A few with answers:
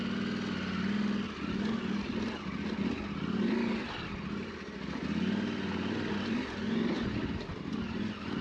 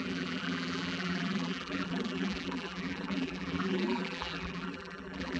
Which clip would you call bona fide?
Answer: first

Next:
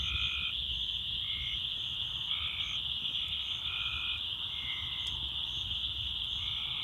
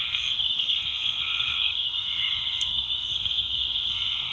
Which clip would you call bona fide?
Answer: first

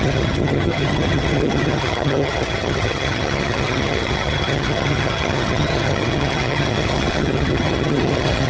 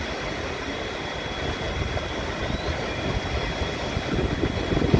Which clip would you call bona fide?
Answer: second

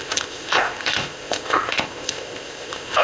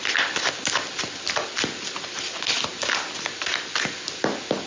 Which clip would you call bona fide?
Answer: second